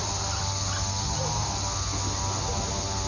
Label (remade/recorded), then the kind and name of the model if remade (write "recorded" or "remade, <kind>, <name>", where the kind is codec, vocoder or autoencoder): recorded